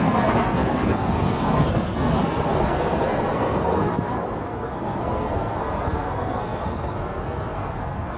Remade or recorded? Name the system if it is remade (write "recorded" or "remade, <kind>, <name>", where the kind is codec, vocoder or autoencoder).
remade, codec, SNAC